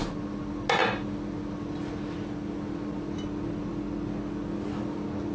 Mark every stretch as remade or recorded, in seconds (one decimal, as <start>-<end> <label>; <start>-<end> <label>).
0.0-5.3 recorded